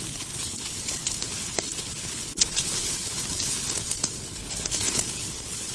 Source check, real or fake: fake